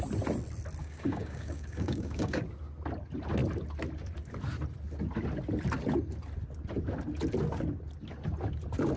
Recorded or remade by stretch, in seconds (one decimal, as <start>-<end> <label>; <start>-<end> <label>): 0.0-0.8 recorded; 0.8-2.4 remade; 2.4-9.0 recorded